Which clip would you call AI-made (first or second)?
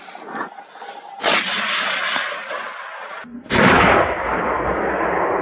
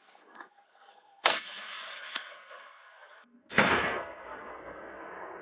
second